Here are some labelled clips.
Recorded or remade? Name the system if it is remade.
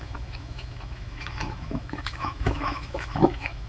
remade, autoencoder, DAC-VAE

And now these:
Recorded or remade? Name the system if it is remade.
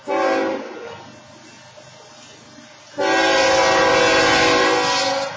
recorded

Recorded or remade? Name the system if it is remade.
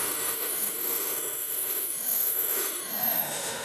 remade, autoencoder, DAC-VAE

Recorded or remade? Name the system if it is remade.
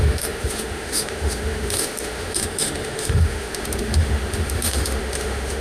remade, autoencoder, DAC-VAE